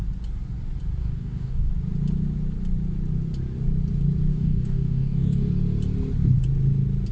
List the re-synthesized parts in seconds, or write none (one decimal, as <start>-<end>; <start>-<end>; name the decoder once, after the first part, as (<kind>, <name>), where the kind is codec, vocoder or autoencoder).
1.0-1.7 (codec, DAC); 4.3-5.5